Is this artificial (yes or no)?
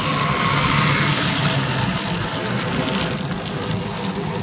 no